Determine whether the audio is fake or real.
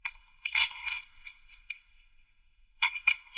fake